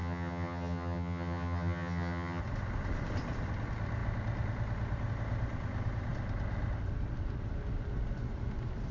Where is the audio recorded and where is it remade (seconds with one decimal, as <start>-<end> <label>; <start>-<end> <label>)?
0.0-2.4 remade; 2.4-8.9 recorded